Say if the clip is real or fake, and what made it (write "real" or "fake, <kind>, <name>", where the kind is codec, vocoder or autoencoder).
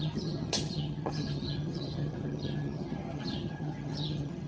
fake, vocoder, HiFi-GAN